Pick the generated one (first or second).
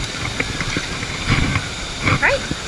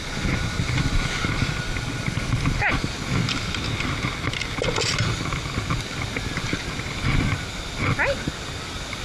first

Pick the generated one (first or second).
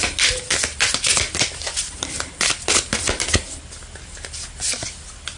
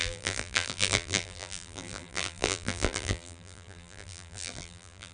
second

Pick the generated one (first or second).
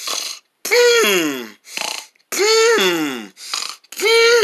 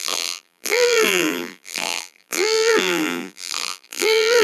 second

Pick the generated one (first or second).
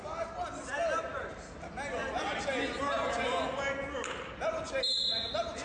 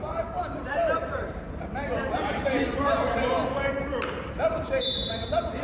second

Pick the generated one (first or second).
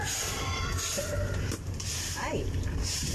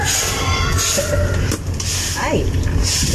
first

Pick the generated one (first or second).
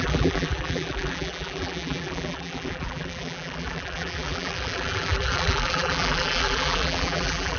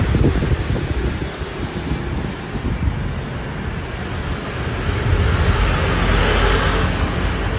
first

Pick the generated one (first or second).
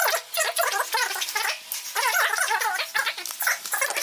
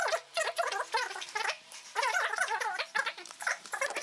second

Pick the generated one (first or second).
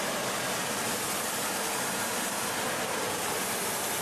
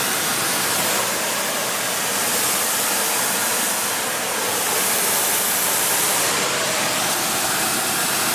second